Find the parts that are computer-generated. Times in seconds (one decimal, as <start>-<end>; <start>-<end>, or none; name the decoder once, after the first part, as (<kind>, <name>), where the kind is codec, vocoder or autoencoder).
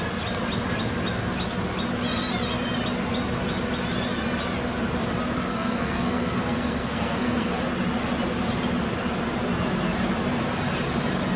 5.5-7.5 (codec, SNAC)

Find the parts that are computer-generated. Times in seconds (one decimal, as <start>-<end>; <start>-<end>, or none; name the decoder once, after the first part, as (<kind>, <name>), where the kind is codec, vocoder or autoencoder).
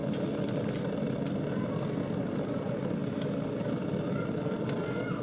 none